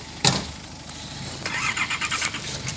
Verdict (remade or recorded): recorded